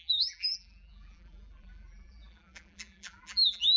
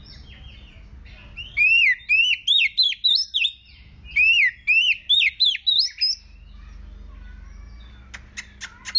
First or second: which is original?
second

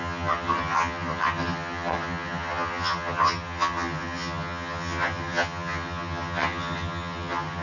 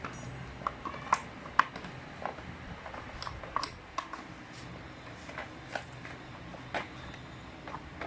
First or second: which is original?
second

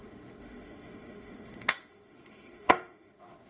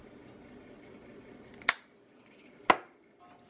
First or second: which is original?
second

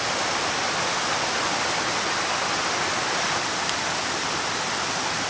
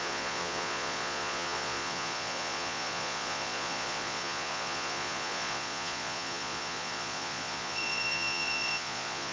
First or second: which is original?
first